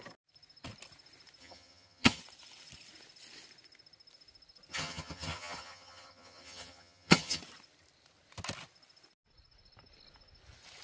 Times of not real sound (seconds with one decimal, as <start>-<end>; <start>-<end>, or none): 1.4-2.2; 4.7-7.4